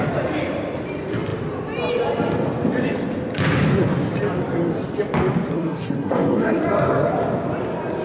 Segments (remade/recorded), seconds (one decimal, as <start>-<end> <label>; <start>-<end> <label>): 0.0-5.5 recorded; 5.5-6.6 remade; 6.6-8.0 recorded